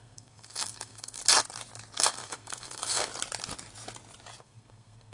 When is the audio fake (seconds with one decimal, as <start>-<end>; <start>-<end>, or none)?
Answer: 0.0-1.2; 2.0-3.1; 4.4-5.1